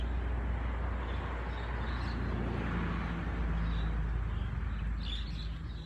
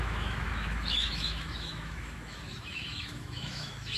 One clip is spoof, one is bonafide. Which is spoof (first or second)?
second